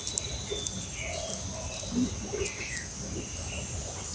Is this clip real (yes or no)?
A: yes